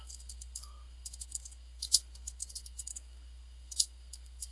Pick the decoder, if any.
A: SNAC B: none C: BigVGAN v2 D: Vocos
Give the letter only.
A